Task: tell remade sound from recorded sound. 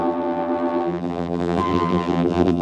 remade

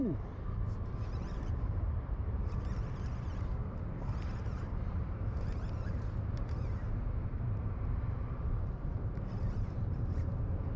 remade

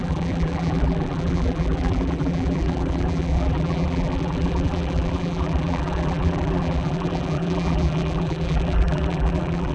remade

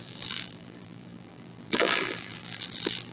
remade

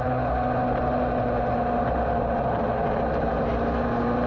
recorded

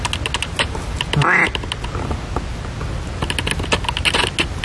recorded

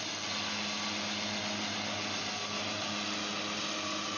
recorded